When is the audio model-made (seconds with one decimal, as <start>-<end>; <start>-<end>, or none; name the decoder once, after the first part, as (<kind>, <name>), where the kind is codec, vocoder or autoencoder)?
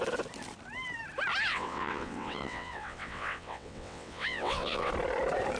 1.5-4.9 (vocoder, WaveNeXt)